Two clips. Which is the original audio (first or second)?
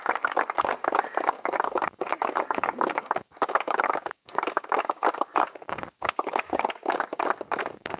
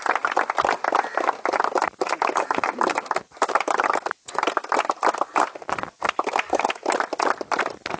second